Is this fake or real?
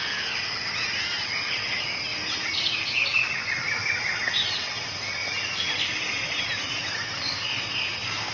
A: real